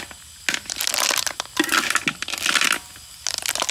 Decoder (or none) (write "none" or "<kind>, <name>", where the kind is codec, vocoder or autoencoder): none